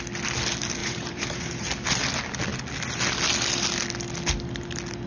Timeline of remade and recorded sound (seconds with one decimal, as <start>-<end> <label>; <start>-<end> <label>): 0.0-0.8 recorded; 0.8-1.7 remade; 1.7-5.1 recorded